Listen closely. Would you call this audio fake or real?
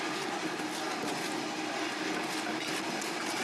real